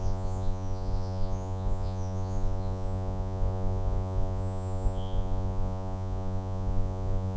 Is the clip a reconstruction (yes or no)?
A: yes